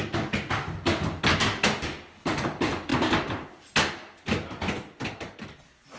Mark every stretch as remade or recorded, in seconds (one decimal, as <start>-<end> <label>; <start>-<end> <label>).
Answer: 0.0-6.0 recorded